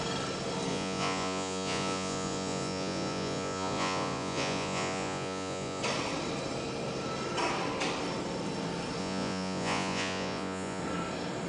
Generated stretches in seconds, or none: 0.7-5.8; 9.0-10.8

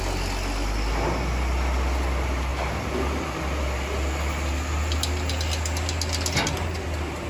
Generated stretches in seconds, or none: none

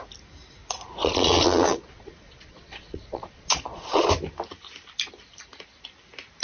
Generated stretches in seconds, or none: 1.0-4.1

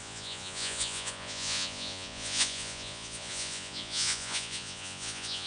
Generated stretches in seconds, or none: 0.0-5.5

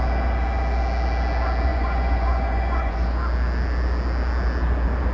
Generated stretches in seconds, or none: 1.7-3.2